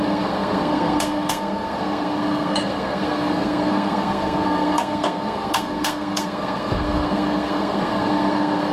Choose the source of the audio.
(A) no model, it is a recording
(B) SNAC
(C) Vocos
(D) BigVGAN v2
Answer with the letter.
B